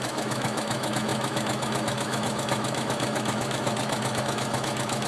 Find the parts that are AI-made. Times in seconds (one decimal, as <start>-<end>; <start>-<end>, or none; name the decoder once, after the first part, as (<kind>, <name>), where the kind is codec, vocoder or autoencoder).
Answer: 0.0-5.1 (autoencoder, DAC-VAE)